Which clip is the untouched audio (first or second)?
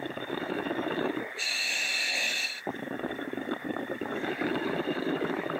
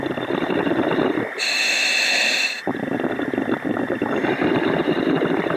second